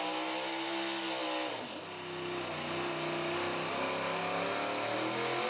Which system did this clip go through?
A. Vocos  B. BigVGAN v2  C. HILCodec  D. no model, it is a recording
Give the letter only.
D